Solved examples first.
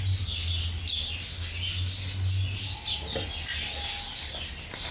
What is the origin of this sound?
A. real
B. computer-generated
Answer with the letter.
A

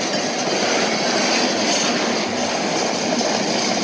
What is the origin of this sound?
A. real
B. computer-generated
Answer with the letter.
A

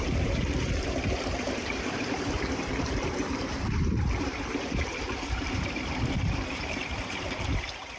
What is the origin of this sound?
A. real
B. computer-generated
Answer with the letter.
B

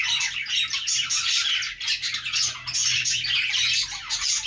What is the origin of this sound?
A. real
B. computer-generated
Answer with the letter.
A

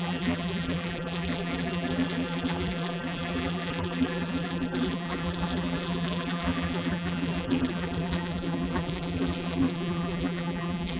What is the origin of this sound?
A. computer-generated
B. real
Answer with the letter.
A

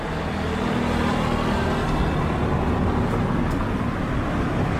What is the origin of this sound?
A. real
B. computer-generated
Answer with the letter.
A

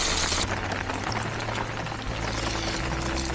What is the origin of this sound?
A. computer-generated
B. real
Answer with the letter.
B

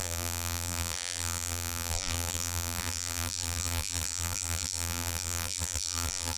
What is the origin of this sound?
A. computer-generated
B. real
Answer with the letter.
A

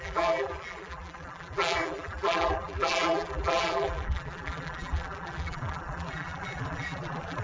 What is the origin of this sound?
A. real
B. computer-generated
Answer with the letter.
B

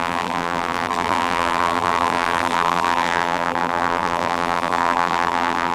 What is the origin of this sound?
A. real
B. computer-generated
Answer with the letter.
B